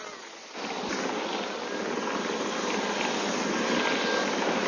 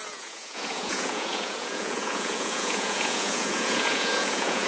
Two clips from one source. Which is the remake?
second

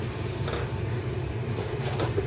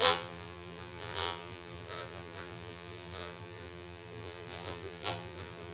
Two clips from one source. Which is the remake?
second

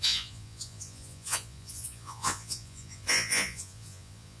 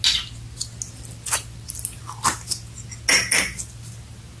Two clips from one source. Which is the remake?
first